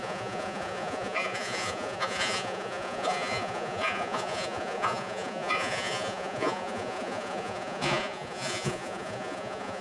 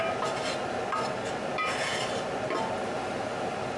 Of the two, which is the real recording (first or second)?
second